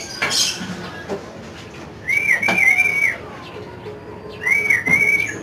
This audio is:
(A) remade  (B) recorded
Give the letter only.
B